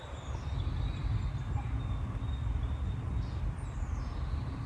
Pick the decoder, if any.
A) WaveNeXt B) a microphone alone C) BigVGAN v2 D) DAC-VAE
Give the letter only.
B